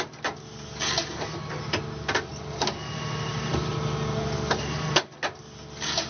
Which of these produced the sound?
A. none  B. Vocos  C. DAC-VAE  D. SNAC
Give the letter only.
A